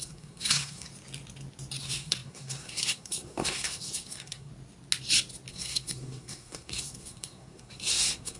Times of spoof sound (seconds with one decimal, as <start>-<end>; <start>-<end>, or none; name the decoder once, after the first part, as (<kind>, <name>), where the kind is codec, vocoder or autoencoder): 0.0-0.9 (codec, SNAC); 1.8-4.5; 5.5-8.4